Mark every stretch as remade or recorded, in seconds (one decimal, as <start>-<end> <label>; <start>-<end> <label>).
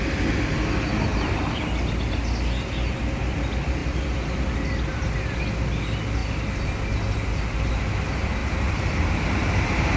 0.0-3.8 recorded; 3.8-5.8 remade; 5.8-8.4 recorded; 8.4-9.2 remade; 9.2-10.0 recorded